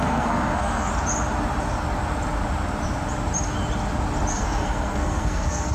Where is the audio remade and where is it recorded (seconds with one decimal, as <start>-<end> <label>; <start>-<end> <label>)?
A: 0.0-0.9 remade; 0.9-4.3 recorded; 4.3-5.7 remade